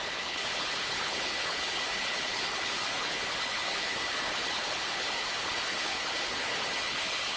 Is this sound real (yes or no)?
no